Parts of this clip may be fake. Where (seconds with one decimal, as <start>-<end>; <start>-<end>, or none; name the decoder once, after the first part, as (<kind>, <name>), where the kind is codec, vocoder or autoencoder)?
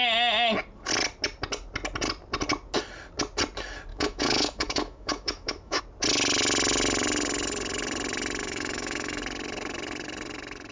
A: 3.9-5.8 (autoencoder, DAC-VAE); 8.4-9.2